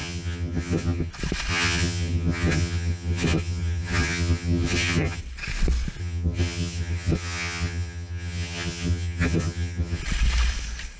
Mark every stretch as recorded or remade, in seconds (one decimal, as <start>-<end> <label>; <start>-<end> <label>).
0.0-1.1 remade; 1.1-1.5 recorded; 1.5-5.2 remade; 5.2-6.0 recorded; 6.0-10.0 remade; 10.0-11.0 recorded